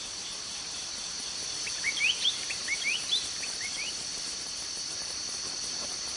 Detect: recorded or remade remade